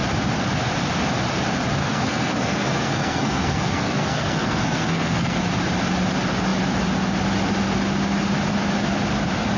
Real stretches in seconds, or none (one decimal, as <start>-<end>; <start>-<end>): 0.0-1.8; 5.4-9.6